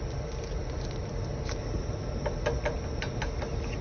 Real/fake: real